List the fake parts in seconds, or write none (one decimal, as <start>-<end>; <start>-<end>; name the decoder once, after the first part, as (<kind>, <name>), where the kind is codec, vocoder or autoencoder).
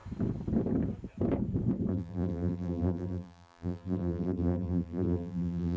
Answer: 1.9-5.8 (vocoder, BigVGAN v2)